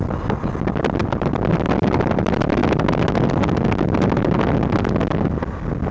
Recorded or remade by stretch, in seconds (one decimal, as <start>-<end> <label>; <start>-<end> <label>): 0.0-5.9 recorded